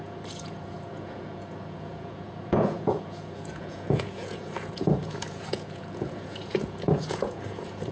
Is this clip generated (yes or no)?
yes